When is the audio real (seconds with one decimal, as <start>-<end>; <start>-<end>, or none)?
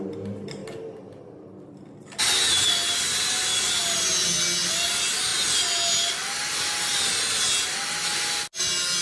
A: 0.0-9.0